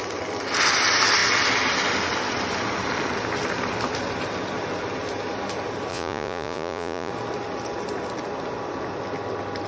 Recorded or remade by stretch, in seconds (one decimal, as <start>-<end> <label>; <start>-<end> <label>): 0.0-5.9 recorded; 5.9-7.1 remade; 7.1-9.7 recorded